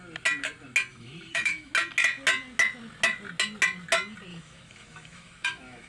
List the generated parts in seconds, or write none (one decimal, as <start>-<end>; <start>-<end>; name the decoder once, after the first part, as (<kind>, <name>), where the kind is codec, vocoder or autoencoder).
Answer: 0.9-1.7 (autoencoder, DAC-VAE); 4.3-5.9